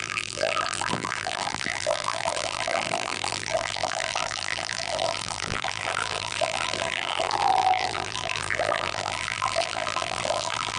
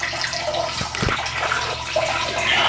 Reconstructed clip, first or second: first